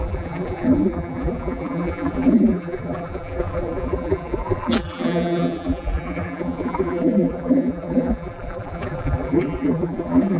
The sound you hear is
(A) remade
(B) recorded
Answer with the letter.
A